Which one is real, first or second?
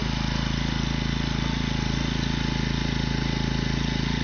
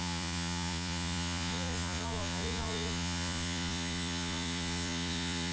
first